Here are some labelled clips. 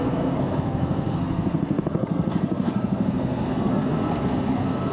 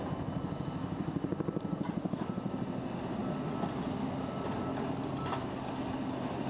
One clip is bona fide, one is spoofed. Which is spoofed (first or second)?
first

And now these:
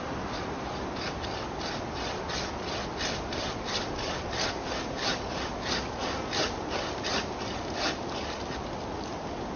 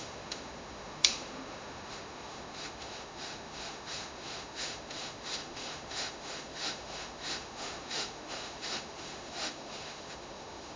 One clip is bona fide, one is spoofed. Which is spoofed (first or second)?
second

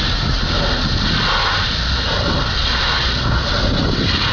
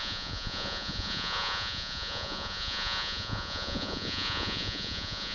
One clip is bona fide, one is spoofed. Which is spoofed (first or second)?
second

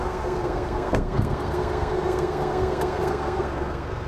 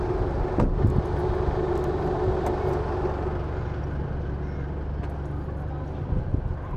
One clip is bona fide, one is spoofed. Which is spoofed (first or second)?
first